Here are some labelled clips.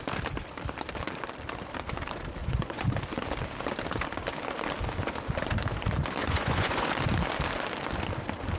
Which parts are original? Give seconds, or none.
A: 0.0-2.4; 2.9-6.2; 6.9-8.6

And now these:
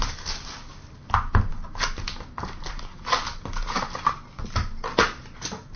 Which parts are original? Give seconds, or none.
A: 0.0-5.8

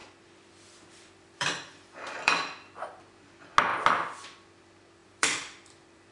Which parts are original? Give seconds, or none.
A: 3.0-5.0

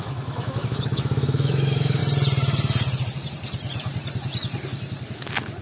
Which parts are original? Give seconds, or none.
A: 2.0-5.6

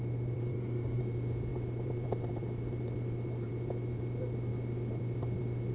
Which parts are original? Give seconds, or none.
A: 0.0-0.5; 1.0-5.7

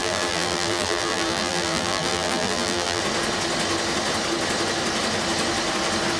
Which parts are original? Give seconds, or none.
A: 3.0-6.2

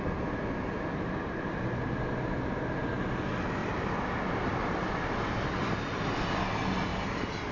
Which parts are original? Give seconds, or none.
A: 0.0-3.6; 5.7-7.5